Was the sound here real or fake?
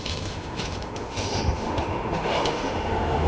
fake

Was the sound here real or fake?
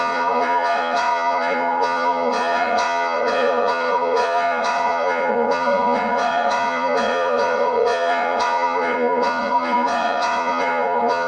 fake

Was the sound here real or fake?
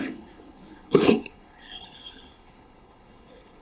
fake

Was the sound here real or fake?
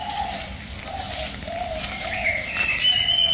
real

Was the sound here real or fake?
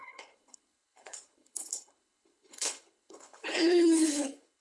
fake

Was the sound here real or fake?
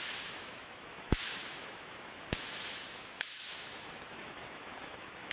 fake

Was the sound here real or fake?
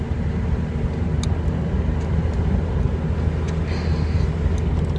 real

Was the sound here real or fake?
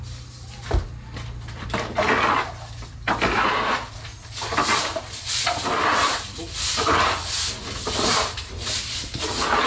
real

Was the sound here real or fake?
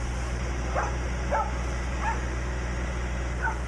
real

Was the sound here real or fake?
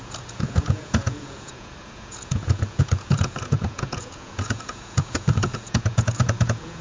fake